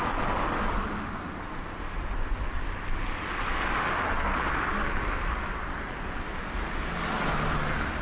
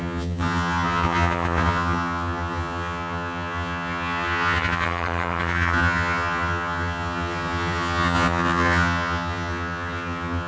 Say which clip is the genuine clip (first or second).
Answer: first